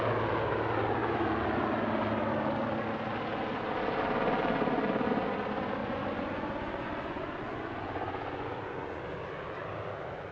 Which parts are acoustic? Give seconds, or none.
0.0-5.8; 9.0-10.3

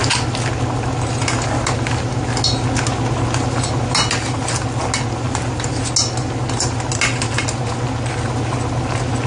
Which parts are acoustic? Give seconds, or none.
0.0-9.3

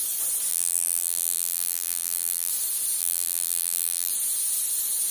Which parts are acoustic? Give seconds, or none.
0.0-0.5; 2.5-3.0; 4.1-5.1

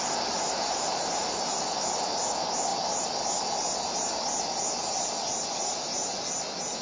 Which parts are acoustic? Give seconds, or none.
0.0-6.8

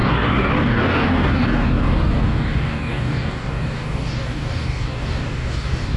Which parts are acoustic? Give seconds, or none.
none